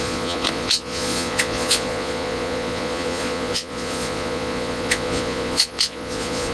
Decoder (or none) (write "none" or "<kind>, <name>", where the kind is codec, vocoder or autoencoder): vocoder, Vocos